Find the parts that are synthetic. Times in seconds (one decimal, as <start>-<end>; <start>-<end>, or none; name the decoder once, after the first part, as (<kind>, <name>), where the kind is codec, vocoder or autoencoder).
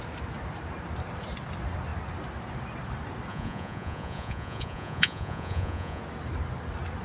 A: 3.3-6.0 (vocoder, Vocos)